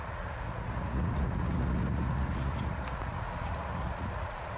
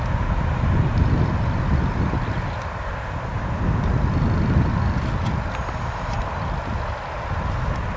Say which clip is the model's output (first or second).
first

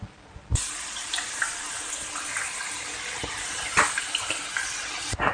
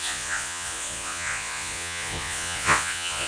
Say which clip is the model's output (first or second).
second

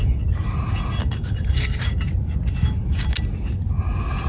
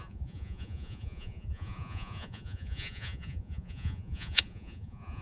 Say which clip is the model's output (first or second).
second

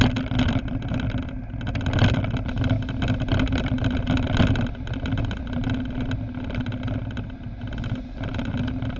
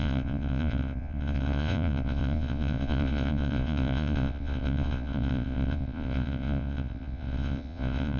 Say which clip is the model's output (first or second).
second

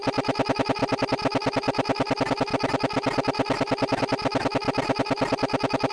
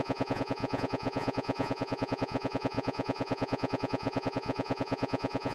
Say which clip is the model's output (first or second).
second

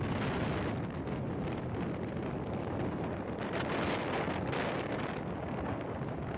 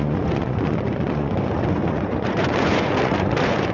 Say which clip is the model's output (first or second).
second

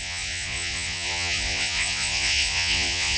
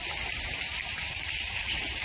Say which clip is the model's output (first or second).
first